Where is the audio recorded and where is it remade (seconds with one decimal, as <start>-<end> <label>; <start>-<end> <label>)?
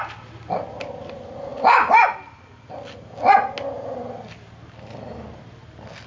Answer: 0.0-6.1 recorded